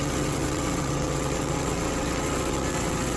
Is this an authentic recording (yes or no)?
no